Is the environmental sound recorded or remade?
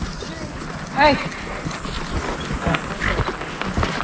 recorded